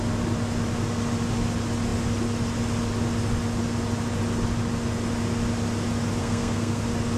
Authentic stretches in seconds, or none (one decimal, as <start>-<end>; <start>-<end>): 0.0-6.2; 6.8-7.2